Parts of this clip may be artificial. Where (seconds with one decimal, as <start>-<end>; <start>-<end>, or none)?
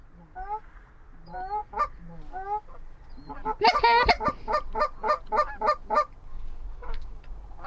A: 6.3-7.2